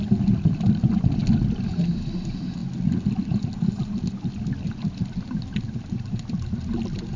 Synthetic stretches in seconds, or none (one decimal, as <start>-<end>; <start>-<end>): none